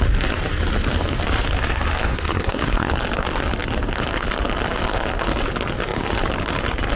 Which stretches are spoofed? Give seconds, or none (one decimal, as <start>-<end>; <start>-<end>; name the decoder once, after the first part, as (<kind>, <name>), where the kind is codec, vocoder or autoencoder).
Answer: 2.0-2.9 (codec, SNAC)